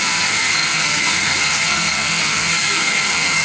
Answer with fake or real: fake